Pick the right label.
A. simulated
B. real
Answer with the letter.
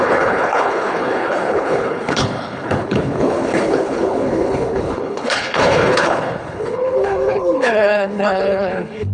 A